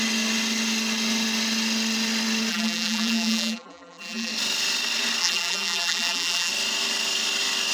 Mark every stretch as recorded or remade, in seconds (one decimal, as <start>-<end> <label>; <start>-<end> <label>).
0.0-2.5 recorded; 2.5-4.3 remade; 4.3-5.2 recorded; 5.2-6.5 remade; 6.5-7.7 recorded